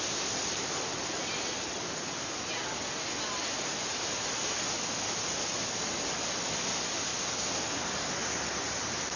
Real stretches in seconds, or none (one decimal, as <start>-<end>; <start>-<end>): 0.0-9.2